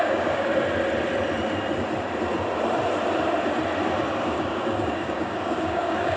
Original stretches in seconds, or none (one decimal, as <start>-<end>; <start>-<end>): 0.5-4.2